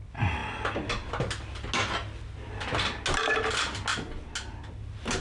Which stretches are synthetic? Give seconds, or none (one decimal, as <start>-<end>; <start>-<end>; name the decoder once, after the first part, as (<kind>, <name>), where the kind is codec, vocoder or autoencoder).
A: none